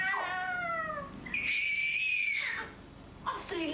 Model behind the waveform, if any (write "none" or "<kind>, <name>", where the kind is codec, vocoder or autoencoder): none